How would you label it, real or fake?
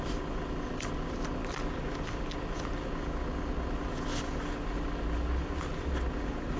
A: real